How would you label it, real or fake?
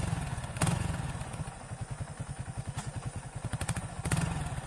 fake